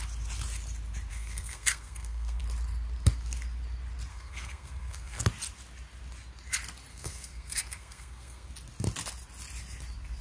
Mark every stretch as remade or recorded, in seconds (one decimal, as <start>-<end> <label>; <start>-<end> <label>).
0.0-1.1 recorded; 1.1-2.4 remade; 2.4-4.1 recorded; 4.1-5.2 remade; 5.2-6.9 recorded; 6.9-8.5 remade; 8.5-10.2 recorded